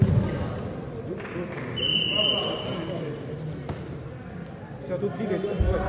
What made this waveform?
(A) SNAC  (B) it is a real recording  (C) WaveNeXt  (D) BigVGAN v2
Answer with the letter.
B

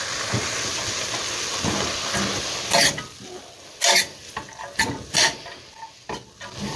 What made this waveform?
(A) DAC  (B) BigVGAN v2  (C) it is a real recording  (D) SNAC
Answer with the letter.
C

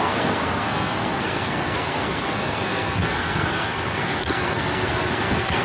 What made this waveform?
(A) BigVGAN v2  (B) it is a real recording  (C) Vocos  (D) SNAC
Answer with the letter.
D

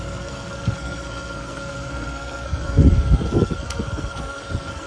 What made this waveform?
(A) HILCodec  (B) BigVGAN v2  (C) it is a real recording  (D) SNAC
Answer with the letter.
D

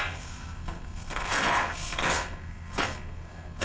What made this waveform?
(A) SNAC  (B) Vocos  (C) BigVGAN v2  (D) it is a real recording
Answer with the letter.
A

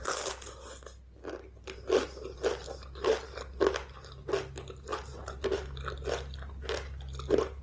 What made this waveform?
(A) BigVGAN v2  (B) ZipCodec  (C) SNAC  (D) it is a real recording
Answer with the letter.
D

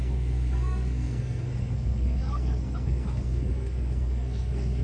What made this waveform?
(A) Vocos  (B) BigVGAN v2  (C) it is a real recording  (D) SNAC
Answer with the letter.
D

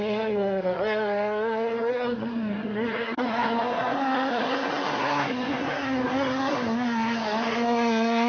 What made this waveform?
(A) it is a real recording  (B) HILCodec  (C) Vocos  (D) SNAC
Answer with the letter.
D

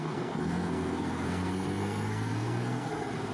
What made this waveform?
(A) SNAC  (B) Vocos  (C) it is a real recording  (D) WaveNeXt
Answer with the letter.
A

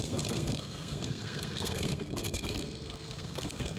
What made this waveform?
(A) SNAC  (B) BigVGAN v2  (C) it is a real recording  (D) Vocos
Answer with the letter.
A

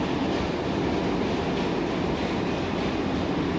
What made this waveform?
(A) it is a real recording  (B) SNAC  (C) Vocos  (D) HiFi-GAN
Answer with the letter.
A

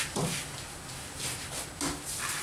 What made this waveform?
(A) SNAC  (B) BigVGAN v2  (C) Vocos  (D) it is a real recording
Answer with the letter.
D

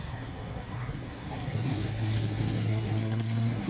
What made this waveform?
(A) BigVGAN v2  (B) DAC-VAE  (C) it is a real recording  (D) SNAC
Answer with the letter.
D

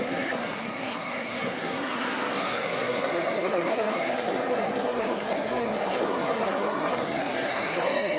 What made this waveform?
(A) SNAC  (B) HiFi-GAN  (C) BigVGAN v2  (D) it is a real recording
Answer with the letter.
A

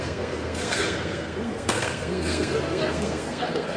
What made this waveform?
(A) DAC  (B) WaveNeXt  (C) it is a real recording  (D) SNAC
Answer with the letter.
D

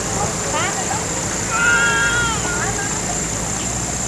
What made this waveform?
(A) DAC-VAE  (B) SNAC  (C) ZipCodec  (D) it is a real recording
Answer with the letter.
D